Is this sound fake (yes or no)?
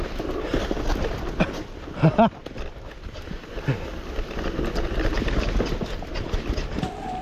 no